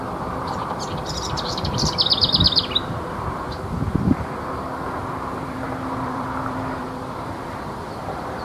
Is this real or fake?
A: fake